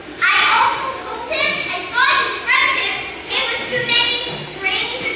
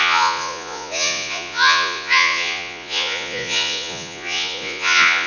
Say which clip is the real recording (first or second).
first